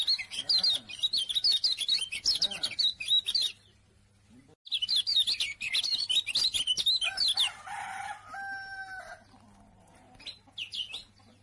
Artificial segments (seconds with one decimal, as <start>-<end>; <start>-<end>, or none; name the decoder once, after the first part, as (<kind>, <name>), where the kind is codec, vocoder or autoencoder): 5.1-5.8 (vocoder, BigVGAN v2)